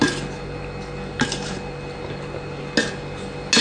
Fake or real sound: real